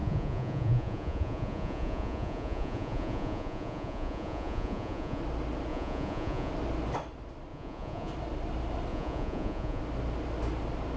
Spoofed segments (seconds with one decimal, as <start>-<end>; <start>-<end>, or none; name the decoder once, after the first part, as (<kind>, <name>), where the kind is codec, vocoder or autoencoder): 0.0-5.2 (vocoder, Vocos); 5.7-6.5; 7.5-8.1; 8.9-9.8